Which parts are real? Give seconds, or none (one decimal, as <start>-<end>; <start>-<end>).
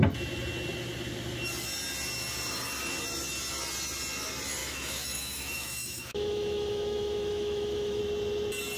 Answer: 0.0-4.6; 8.0-8.8